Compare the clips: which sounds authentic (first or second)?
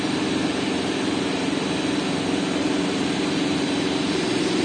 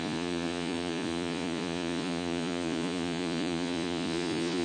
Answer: first